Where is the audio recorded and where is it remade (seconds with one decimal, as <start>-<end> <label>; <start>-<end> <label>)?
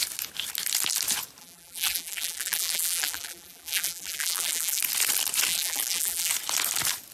0.0-1.4 recorded; 1.4-4.8 remade; 4.8-5.5 recorded; 5.5-6.3 remade; 6.3-7.1 recorded